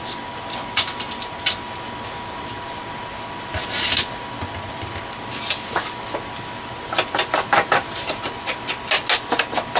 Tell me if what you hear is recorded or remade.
recorded